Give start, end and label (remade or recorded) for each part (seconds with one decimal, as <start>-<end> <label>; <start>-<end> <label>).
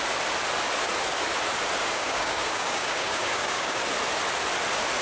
0.0-1.8 recorded; 1.8-3.8 remade; 3.8-5.0 recorded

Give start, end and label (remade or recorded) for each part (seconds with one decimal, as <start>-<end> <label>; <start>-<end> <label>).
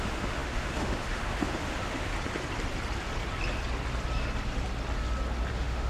0.0-2.1 remade; 2.1-5.5 recorded; 5.5-5.9 remade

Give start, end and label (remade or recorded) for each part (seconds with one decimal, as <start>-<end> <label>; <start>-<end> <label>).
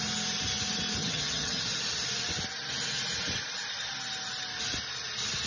0.0-1.0 recorded; 1.0-1.6 remade; 1.6-5.5 recorded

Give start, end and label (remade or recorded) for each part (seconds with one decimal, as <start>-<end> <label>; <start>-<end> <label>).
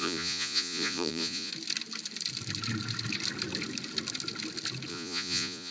0.0-1.5 remade; 1.5-4.9 recorded; 4.9-5.7 remade